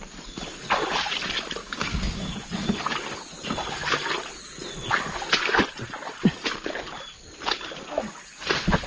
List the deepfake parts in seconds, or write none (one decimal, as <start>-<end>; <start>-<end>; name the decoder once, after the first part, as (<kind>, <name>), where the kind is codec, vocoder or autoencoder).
1.6-2.3 (codec, DAC)